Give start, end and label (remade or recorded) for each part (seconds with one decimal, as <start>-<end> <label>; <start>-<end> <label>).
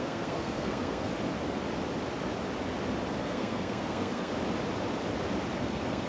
0.0-1.1 remade; 1.1-3.2 recorded; 3.2-4.3 remade; 4.3-5.6 recorded; 5.6-6.1 remade